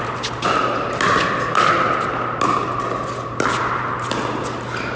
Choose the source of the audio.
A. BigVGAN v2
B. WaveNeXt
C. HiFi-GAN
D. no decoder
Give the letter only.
D